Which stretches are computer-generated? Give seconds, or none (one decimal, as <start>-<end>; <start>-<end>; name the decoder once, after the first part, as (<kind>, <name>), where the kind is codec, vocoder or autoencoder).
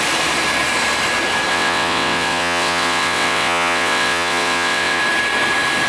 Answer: 1.5-5.0 (vocoder, WaveNeXt)